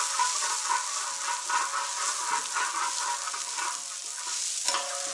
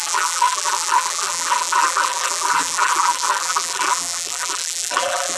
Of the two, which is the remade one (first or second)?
second